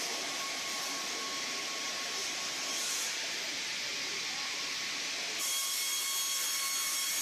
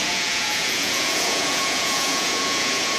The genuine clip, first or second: first